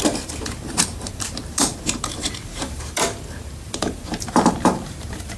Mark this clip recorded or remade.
remade